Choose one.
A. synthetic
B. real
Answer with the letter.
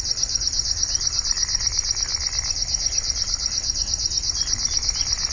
B